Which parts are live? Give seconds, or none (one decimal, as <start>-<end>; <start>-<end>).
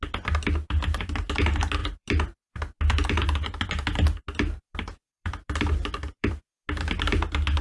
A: 0.0-1.8; 2.5-5.1; 6.3-7.6